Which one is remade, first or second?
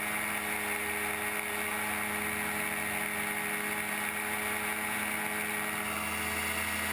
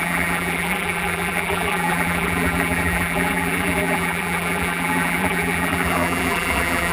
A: second